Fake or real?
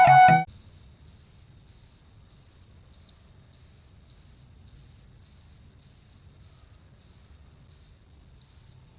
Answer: real